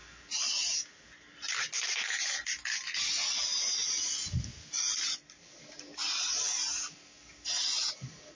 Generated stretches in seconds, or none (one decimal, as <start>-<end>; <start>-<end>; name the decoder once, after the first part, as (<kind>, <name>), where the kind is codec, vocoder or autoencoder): none

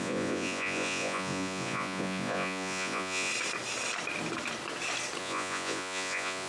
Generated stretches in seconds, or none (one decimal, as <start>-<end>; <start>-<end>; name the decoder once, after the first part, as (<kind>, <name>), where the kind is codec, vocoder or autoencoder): 0.0-3.3 (vocoder, Vocos); 5.2-6.5